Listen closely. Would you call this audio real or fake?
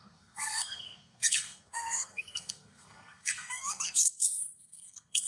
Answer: fake